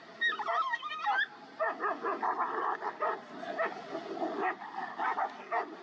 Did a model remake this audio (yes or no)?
no